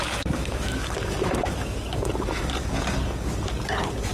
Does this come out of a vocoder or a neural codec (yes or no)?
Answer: yes